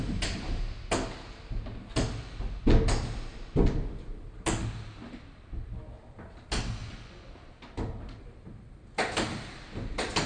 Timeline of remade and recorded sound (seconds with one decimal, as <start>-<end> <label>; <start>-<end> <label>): 0.0-6.8 recorded; 6.8-7.3 remade; 7.3-10.3 recorded